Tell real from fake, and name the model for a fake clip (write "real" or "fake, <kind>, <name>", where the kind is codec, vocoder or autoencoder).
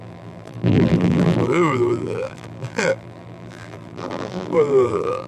fake, vocoder, BigVGAN v2